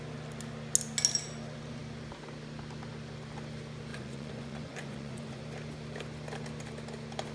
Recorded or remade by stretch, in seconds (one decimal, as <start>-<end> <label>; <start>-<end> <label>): 0.0-3.9 recorded; 3.9-5.4 remade; 5.4-7.3 recorded